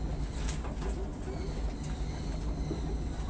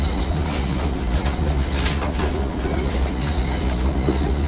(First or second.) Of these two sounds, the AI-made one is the second